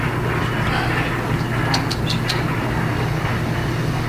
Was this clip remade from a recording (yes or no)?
no